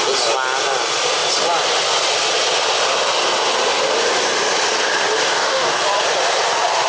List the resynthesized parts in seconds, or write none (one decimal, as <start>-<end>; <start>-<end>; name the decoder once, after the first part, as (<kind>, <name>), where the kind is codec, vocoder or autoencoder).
5.2-5.8 (codec, DAC)